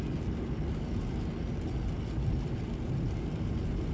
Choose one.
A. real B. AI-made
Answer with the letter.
A